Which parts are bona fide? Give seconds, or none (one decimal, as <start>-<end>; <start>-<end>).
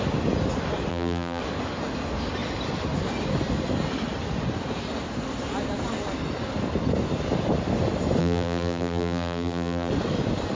0.0-0.9; 1.4-8.2; 9.9-10.5